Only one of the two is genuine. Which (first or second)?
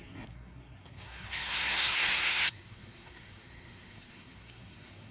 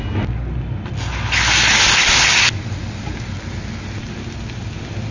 second